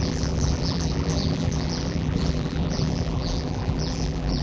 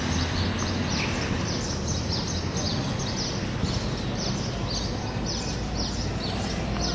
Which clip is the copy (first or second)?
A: first